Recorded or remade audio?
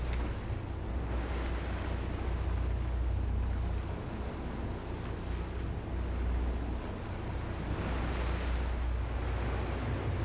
recorded